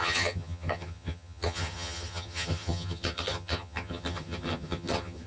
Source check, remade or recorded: remade